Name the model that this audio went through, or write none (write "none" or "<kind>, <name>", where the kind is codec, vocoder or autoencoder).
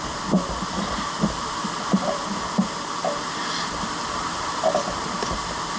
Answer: none